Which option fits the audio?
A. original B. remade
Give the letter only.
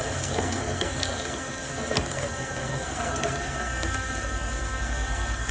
B